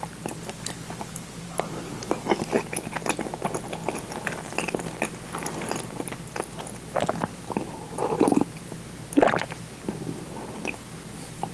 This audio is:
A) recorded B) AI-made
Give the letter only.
A